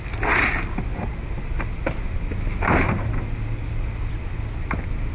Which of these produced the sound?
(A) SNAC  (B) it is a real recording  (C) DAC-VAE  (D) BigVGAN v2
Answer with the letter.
B